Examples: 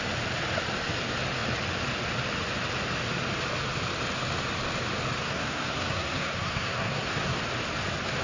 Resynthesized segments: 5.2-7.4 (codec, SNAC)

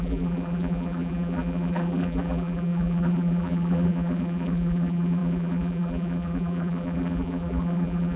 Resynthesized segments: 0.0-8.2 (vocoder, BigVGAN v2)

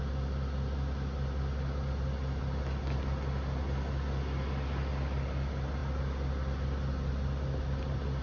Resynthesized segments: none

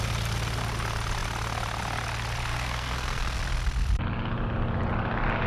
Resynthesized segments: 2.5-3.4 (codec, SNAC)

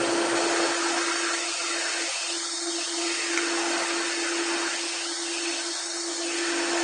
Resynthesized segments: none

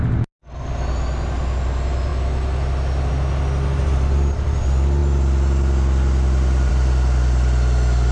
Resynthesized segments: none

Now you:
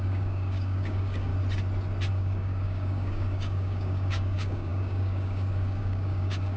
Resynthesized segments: 0.0-1.3 (codec, DAC); 2.1-6.6